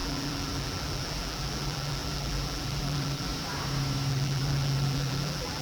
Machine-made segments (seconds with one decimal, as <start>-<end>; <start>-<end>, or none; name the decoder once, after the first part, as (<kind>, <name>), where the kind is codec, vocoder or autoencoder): 0.0-3.3 (vocoder, BigVGAN v2); 4.1-5.6